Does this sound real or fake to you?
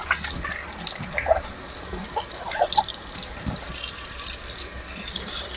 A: real